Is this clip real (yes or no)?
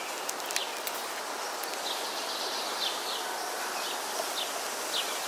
yes